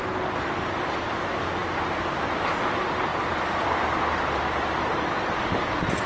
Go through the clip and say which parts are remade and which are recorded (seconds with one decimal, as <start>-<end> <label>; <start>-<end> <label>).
0.0-1.6 recorded; 1.6-2.1 remade; 2.1-3.1 recorded; 3.1-4.6 remade; 4.6-6.1 recorded